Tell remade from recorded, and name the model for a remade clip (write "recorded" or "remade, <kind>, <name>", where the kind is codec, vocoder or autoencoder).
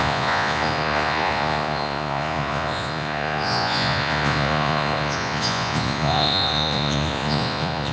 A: remade, vocoder, Vocos